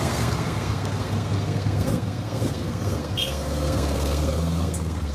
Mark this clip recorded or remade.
remade